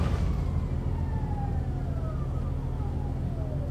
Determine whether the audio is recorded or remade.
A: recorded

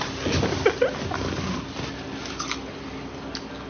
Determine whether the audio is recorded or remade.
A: recorded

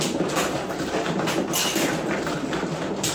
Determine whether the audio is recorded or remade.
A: recorded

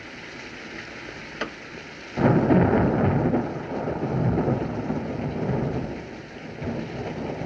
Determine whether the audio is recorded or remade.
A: recorded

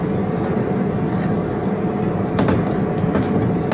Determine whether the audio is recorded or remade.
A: recorded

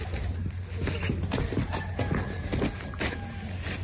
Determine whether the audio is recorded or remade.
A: recorded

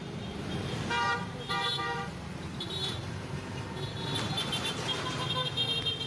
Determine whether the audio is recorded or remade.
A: remade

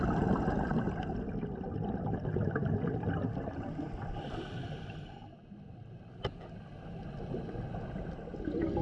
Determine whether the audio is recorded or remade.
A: recorded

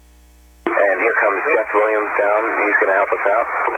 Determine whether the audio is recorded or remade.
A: remade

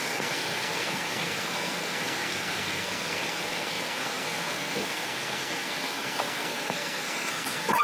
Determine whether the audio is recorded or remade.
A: remade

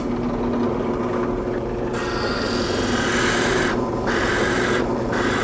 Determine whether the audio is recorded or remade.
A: recorded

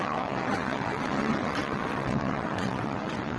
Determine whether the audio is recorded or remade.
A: remade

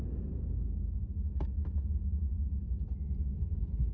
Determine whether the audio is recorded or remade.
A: recorded